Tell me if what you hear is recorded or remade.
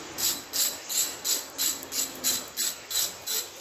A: recorded